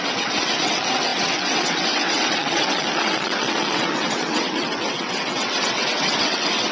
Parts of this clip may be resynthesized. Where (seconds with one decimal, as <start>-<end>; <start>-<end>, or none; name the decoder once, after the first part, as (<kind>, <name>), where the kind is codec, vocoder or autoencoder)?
0.0-6.7 (vocoder, WaveNeXt)